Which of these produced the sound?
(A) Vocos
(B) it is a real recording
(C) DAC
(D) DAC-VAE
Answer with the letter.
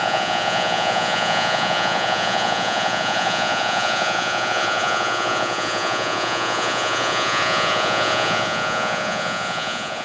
A